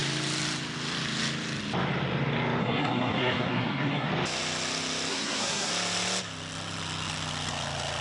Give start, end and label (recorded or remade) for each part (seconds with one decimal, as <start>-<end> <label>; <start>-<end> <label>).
0.0-2.6 recorded; 2.6-4.1 remade; 4.1-5.1 recorded; 5.1-5.7 remade; 5.7-8.0 recorded